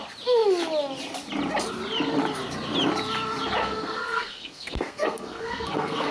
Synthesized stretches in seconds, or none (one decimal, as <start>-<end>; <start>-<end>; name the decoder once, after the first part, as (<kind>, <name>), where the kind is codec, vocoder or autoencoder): 3.6-6.1 (codec, SNAC)